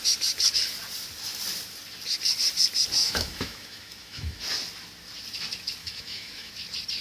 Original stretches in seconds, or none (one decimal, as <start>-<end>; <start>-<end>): 0.0-3.0; 4.4-5.8; 6.5-7.0